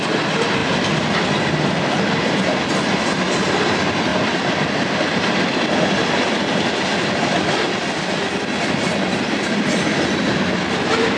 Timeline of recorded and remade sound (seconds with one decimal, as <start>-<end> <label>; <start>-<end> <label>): 0.0-11.2 recorded